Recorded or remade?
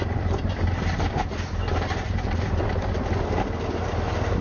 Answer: recorded